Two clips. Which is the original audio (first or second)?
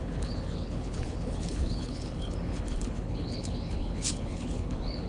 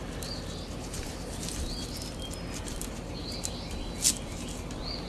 second